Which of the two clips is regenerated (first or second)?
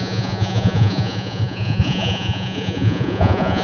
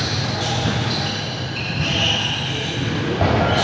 first